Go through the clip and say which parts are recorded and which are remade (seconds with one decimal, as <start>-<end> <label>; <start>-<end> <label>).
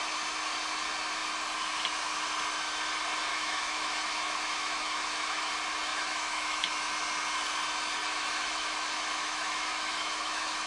0.0-3.3 recorded; 3.3-5.5 remade; 5.5-5.9 recorded; 5.9-6.9 remade; 6.9-8.1 recorded; 8.1-10.7 remade